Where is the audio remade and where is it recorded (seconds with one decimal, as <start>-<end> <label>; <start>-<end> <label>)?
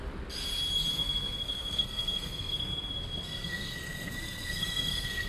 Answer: 0.0-0.9 recorded; 0.9-2.9 remade; 2.9-3.4 recorded; 3.4-5.3 remade